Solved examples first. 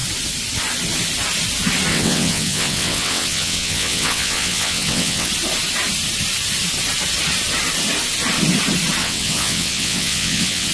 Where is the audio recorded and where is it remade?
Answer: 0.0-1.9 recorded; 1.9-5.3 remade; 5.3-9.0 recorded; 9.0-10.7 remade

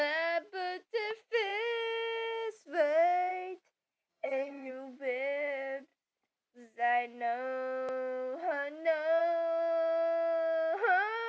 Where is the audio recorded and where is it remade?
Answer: 0.0-4.1 recorded; 4.1-4.7 remade; 4.7-11.3 recorded

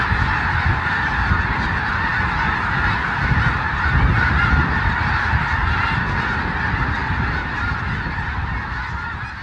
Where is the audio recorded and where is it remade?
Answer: 0.0-9.4 recorded